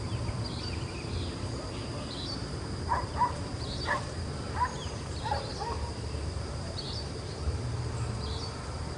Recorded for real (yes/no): no